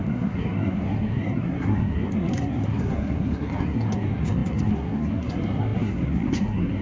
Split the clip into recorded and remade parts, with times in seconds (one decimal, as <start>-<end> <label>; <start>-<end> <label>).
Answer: 0.0-6.8 remade